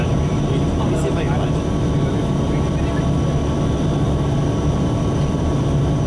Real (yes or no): yes